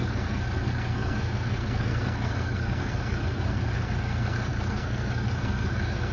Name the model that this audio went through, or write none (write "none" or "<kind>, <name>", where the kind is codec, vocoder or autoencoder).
codec, SNAC